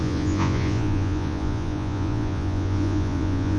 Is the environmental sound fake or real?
fake